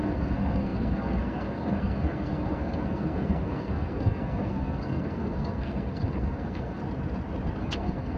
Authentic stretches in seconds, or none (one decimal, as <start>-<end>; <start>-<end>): 6.8-7.6